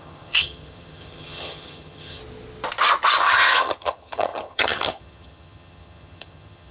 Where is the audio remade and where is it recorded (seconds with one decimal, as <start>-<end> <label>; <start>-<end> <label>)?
0.0-2.2 remade; 2.2-3.2 recorded; 3.2-6.7 remade